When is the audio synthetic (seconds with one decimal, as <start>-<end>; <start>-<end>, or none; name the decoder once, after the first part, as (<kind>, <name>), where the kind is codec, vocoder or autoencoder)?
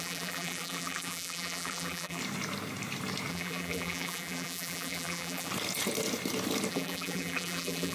0.0-2.2 (vocoder, BigVGAN v2); 3.3-5.5; 6.7-7.9